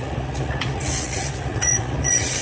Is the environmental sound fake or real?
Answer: fake